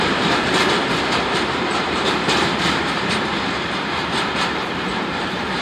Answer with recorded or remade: remade